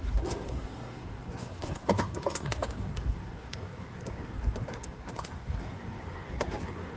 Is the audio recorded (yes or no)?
no